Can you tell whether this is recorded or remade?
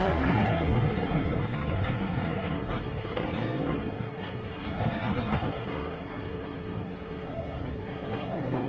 remade